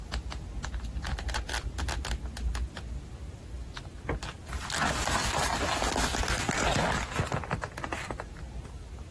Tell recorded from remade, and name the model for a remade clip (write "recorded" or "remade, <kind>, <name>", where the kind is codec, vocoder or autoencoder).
recorded